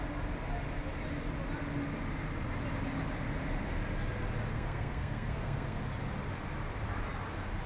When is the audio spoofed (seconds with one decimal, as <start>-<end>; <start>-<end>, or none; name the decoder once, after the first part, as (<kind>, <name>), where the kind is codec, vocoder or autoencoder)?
4.5-5.8 (codec, SNAC)